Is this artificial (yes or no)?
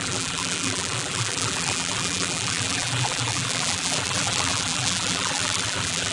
yes